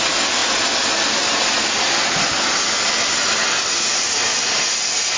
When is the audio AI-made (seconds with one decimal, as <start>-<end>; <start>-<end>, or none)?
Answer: none